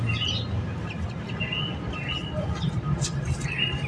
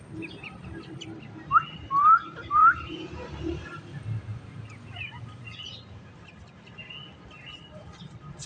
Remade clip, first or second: second